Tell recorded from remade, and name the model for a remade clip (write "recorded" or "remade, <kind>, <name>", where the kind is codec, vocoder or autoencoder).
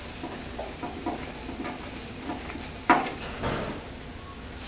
recorded